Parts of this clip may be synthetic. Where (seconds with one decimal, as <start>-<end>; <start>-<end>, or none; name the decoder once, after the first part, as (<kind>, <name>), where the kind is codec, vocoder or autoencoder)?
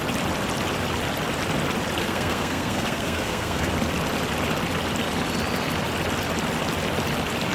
2.0-3.7 (codec, SNAC)